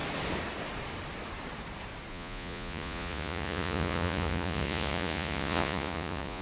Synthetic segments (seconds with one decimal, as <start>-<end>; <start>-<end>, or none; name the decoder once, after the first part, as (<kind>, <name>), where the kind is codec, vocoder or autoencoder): 2.1-6.4 (vocoder, Vocos)